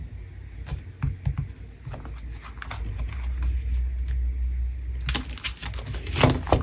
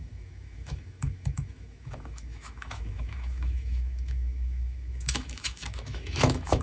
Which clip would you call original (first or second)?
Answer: first